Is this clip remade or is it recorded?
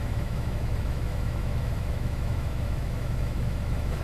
remade